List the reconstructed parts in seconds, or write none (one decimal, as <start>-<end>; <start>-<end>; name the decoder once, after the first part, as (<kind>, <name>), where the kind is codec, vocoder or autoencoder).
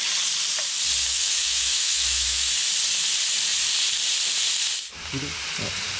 1.0-2.5 (autoencoder, DAC-VAE)